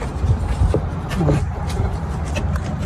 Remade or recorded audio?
recorded